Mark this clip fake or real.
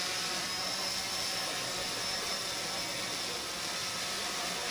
real